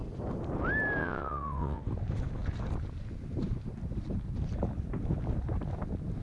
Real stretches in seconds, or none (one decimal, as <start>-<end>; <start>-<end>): 0.0-1.0; 1.8-6.2